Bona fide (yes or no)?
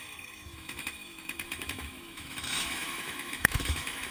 no